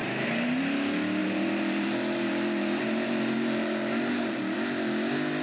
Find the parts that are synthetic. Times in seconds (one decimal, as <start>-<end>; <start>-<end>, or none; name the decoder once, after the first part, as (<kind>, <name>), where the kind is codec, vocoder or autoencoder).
0.0-0.6 (vocoder, BigVGAN v2); 1.2-4.4